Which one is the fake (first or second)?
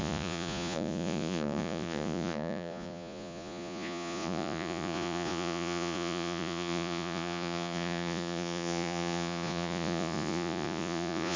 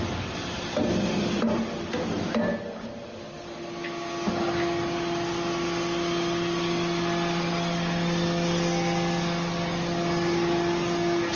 first